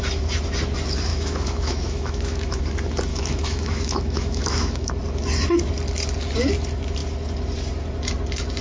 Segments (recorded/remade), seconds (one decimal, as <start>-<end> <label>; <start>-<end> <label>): 0.0-1.1 recorded; 1.1-2.6 remade; 2.6-3.1 recorded; 3.1-4.9 remade; 4.9-8.6 recorded